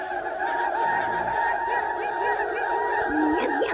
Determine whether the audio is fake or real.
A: real